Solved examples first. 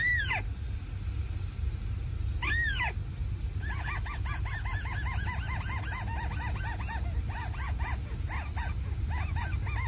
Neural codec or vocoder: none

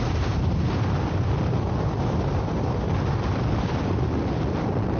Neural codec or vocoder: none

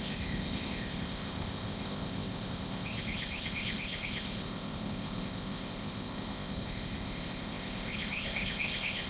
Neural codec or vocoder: codec, ZipCodec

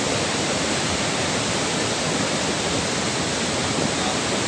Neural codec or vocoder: none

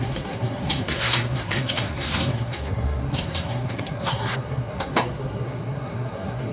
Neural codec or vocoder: codec, SNAC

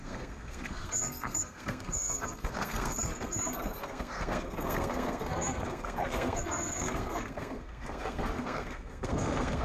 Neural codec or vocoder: codec, SNAC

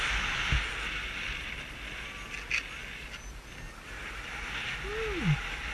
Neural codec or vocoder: none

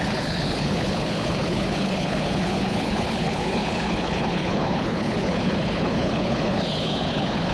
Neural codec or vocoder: codec, HILCodec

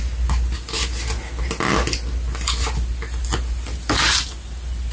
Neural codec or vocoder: none